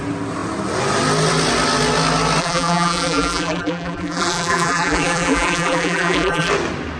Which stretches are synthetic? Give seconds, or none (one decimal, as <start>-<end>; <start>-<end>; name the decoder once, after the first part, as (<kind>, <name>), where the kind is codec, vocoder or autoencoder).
2.4-6.5 (vocoder, BigVGAN v2)